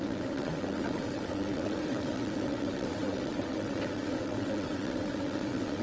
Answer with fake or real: fake